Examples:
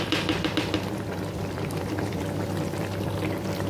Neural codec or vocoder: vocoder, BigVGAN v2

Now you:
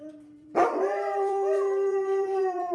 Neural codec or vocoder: vocoder, BigVGAN v2